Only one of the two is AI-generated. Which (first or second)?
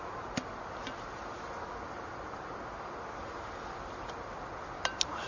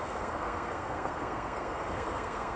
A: second